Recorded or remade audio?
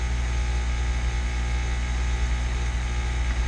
recorded